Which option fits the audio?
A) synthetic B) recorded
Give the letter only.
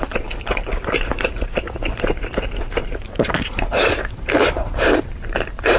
A